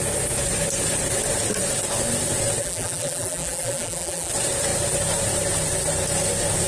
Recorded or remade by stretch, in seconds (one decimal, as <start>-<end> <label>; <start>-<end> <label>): 0.0-2.6 recorded; 2.6-4.3 remade; 4.3-6.7 recorded